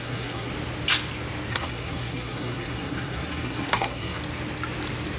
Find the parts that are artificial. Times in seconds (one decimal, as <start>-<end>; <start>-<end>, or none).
0.0-0.5; 1.5-4.2